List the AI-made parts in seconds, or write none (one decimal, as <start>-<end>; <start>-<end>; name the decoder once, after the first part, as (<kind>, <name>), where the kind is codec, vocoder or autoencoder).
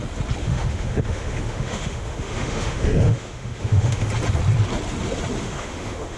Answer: 0.4-4.1 (autoencoder, DAC-VAE); 5.4-6.2